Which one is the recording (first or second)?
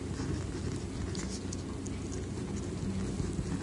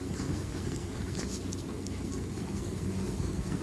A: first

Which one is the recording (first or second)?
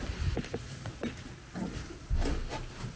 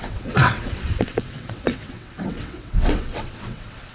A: first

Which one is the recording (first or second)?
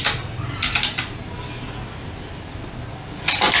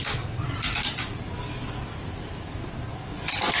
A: first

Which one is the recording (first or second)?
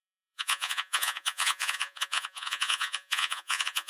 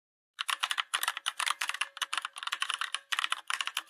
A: second